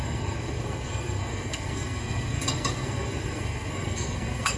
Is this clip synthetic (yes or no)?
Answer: yes